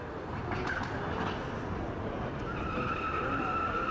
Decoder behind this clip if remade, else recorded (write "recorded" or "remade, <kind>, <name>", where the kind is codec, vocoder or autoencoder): recorded